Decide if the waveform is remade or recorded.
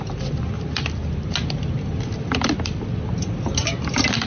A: recorded